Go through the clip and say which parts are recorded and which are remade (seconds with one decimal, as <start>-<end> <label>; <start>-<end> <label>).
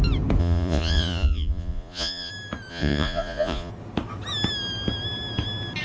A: 0.0-0.4 recorded; 0.4-2.3 remade; 2.3-2.7 recorded; 2.7-3.7 remade; 3.7-5.8 recorded